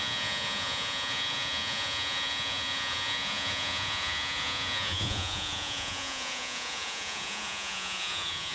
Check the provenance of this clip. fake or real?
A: fake